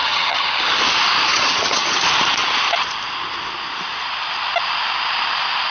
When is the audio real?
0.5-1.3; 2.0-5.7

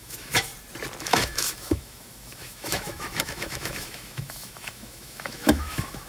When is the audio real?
0.5-1.0

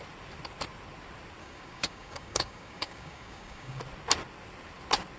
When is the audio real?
0.0-1.4; 3.8-5.2

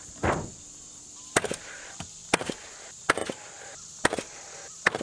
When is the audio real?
3.2-5.0

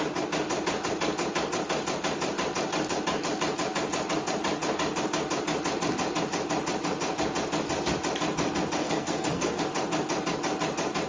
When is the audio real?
0.0-8.8; 9.6-11.1

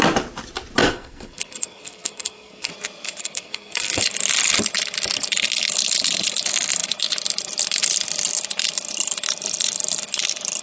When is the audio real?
0.0-0.8; 2.7-3.2; 4.0-10.6